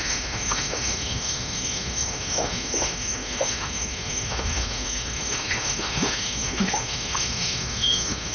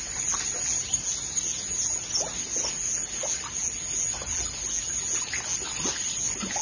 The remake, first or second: first